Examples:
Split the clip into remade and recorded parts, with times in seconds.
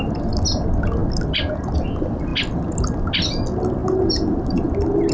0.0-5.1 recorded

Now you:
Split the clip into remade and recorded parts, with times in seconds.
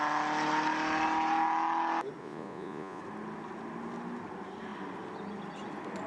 0.0-2.2 recorded; 2.2-3.0 remade; 3.0-6.1 recorded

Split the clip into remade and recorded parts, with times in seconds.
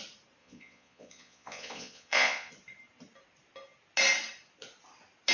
0.0-0.4 recorded; 0.4-2.5 remade; 2.5-5.3 recorded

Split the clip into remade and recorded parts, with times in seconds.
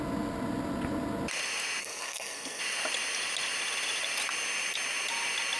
0.0-1.8 recorded; 1.8-2.6 remade; 2.6-5.6 recorded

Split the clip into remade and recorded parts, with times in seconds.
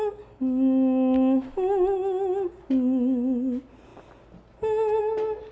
0.0-5.5 recorded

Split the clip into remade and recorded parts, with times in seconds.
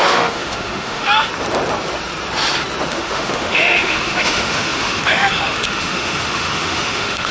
0.0-1.3 remade; 1.3-2.9 recorded; 2.9-7.3 remade